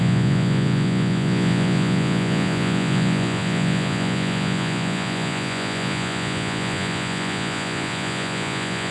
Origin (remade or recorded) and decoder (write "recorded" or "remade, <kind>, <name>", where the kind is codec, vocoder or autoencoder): remade, vocoder, Vocos